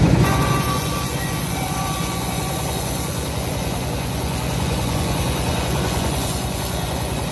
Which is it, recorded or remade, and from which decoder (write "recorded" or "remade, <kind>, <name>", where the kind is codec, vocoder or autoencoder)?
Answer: remade, vocoder, Vocos